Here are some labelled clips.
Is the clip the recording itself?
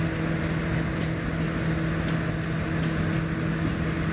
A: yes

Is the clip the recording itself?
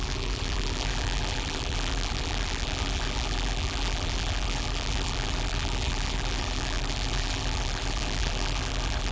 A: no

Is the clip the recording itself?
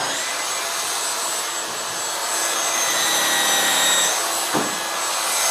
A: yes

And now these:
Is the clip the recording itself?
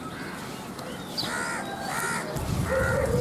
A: yes